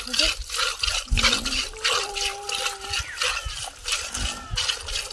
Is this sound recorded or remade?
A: recorded